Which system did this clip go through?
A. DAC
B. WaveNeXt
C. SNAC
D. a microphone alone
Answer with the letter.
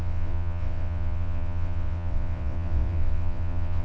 B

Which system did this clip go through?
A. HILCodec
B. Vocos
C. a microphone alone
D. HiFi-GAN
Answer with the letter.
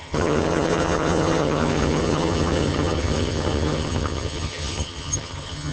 D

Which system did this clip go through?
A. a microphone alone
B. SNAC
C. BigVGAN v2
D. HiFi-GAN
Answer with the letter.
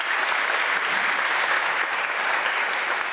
A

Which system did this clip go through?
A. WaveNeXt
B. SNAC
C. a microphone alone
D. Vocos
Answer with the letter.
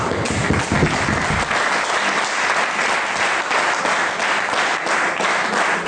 C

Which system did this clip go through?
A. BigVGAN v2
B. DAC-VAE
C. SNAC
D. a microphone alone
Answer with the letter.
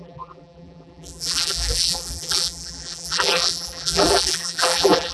A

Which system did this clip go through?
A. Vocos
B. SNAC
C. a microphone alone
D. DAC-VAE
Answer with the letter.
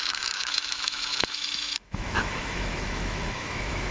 D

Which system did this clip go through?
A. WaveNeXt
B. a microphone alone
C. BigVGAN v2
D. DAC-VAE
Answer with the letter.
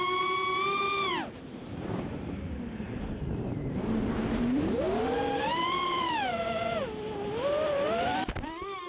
C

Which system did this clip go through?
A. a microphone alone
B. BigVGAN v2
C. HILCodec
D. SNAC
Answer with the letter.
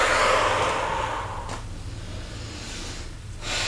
A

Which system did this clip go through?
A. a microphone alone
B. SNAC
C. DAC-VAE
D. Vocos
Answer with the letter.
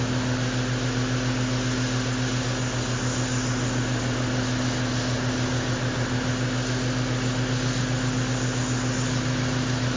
A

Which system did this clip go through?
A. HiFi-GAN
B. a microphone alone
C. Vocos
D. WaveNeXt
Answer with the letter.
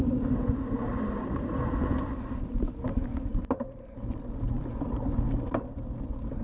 B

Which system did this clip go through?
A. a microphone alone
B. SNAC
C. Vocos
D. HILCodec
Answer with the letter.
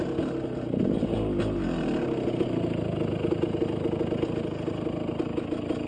A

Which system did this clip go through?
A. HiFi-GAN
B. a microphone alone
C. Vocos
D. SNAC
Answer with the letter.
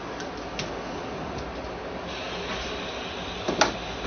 B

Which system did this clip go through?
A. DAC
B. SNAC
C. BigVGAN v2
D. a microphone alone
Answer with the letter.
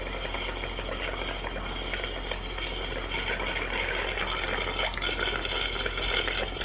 D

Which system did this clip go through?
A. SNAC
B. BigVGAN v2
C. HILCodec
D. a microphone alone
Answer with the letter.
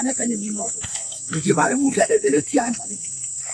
A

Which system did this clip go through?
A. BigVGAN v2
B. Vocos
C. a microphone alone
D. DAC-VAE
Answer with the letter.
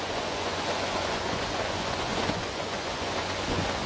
B